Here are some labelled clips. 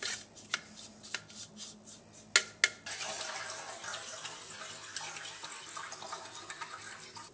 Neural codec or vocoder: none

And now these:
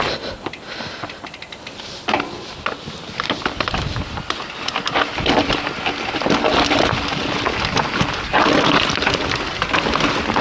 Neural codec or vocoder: none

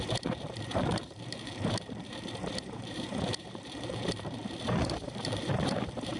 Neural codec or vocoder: vocoder, BigVGAN v2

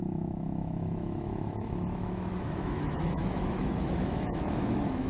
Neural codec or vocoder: autoencoder, DAC-VAE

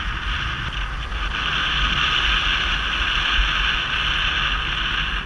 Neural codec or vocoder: none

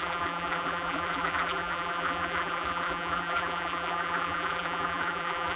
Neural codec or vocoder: vocoder, BigVGAN v2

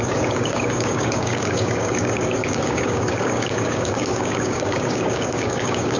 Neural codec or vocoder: codec, DAC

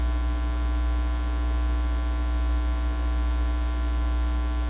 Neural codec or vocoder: none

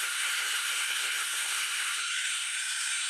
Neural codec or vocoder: codec, SNAC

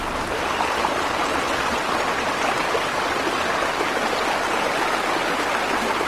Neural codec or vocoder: none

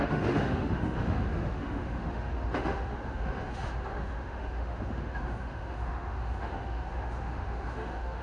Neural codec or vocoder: autoencoder, DAC-VAE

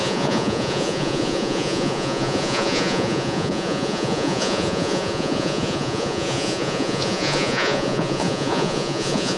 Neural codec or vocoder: vocoder, Vocos